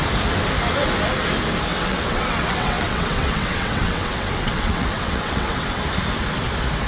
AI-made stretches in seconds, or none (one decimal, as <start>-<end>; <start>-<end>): 1.7-5.8